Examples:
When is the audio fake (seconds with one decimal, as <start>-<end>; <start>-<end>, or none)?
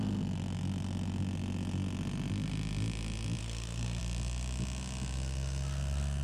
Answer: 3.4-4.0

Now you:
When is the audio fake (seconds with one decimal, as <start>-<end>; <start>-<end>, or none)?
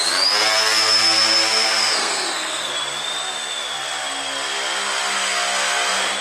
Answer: 1.8-2.7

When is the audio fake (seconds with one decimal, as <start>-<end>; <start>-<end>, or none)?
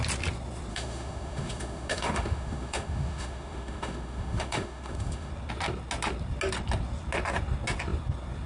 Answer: 0.7-5.3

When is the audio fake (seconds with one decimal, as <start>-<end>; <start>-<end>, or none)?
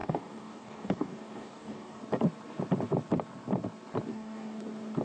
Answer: 0.0-2.0; 4.1-4.6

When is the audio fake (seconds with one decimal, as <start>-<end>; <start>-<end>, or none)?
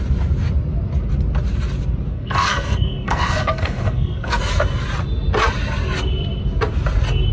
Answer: 2.1-4.4